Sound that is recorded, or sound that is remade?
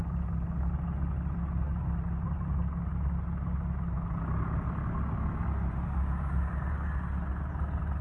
recorded